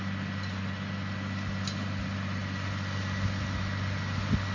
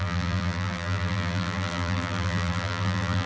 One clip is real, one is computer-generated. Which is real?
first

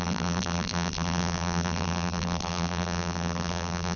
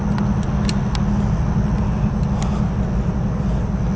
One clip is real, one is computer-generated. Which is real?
second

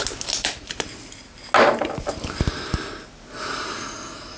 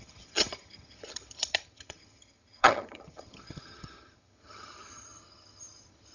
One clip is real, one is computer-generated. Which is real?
first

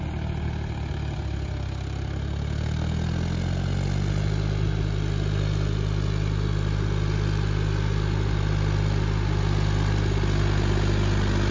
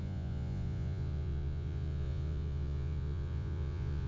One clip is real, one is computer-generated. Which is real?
first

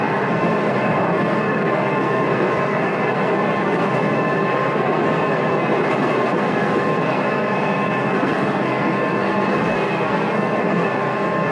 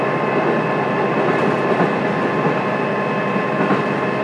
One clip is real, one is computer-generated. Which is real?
second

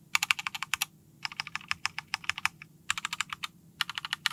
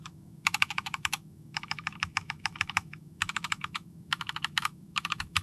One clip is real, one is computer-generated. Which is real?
first